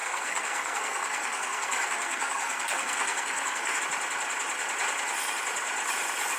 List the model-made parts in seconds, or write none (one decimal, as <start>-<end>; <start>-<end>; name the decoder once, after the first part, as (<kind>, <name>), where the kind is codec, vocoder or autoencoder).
0.0-3.8 (codec, SNAC)